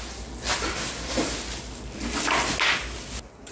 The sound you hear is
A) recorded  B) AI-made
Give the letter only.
A